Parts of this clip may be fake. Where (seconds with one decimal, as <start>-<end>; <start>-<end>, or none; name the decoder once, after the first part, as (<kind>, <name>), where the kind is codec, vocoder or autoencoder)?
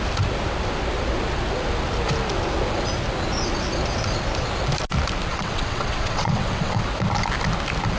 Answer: 5.3-6.8 (vocoder, WaveNeXt)